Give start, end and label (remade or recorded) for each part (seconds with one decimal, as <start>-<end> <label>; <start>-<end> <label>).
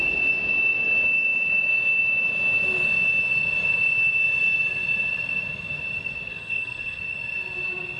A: 0.0-6.3 recorded; 6.3-7.0 remade; 7.0-8.0 recorded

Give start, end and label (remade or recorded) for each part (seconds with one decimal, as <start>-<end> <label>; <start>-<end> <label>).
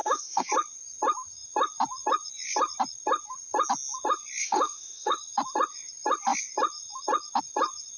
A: 0.0-0.5 remade; 0.5-4.4 recorded; 4.4-5.1 remade; 5.1-8.0 recorded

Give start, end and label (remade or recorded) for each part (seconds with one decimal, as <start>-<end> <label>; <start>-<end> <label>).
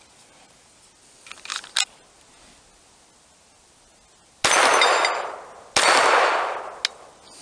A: 0.0-7.4 recorded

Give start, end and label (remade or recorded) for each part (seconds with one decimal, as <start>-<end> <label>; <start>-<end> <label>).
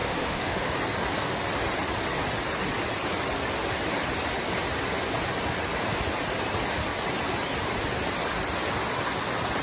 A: 0.0-0.7 remade; 0.7-9.6 recorded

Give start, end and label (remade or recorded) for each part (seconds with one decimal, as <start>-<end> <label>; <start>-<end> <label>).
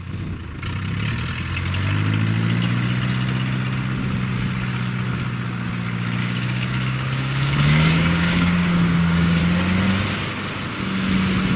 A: 0.0-6.2 recorded; 6.2-9.4 remade; 9.4-11.6 recorded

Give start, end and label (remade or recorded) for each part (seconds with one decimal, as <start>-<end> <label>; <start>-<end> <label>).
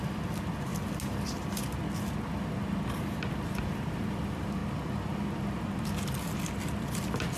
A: 0.0-0.7 remade; 0.7-3.3 recorded; 3.3-4.6 remade; 4.6-5.8 recorded; 5.8-7.4 remade